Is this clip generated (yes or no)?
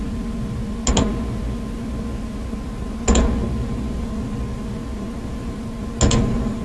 no